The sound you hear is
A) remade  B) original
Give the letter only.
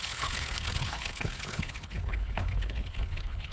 A